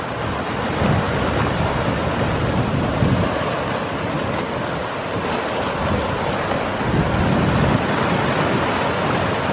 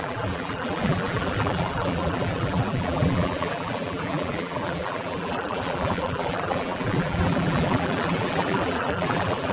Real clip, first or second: first